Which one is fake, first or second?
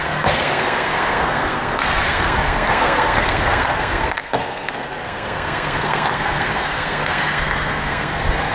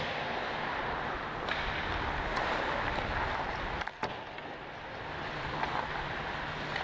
first